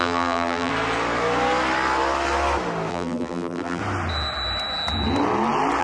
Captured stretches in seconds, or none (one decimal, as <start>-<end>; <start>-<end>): 0.7-2.9; 3.8-5.8